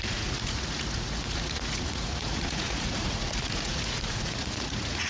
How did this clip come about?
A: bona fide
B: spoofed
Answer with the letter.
B